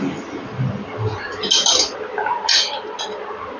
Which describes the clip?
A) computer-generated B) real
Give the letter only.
B